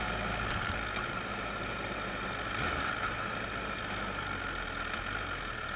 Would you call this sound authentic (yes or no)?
yes